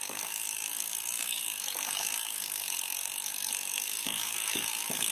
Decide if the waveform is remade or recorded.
remade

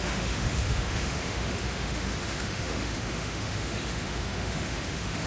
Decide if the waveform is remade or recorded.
remade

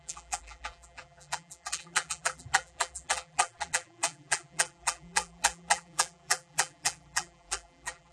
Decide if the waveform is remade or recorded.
remade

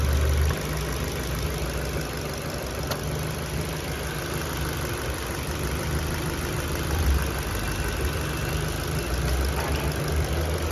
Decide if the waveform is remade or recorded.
recorded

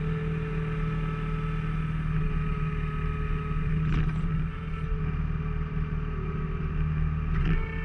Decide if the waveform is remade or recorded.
recorded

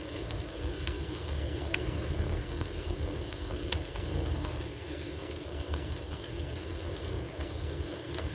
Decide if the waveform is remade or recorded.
remade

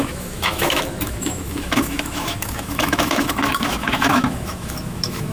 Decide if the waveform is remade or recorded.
remade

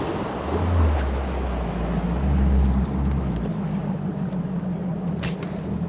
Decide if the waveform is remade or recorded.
recorded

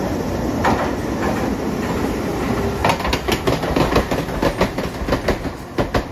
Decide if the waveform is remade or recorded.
recorded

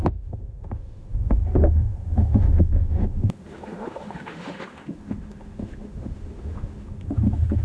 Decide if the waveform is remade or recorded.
remade